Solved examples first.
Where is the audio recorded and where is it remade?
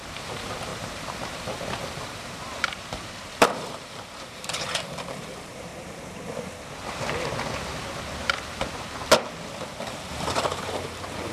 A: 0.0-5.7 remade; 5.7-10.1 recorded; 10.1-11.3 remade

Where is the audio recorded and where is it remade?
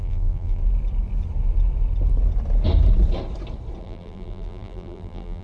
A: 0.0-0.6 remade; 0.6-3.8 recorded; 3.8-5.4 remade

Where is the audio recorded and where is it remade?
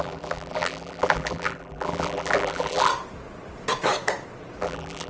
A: 0.0-2.9 remade; 2.9-4.6 recorded; 4.6-5.1 remade